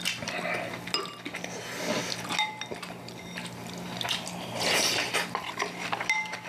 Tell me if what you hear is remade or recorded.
recorded